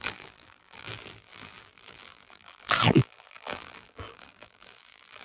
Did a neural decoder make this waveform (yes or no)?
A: yes